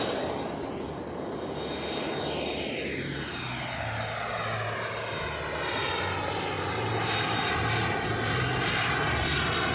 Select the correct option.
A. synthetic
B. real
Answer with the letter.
B